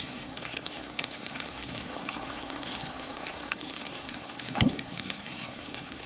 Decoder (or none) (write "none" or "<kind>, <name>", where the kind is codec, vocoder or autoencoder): codec, SNAC